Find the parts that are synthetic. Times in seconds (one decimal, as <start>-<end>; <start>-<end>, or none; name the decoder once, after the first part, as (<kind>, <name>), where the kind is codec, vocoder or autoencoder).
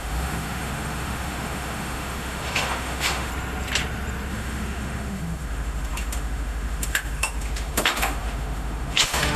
0.0-3.3 (autoencoder, DAC-VAE); 4.3-9.4